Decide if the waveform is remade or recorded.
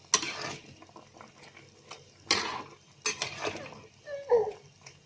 recorded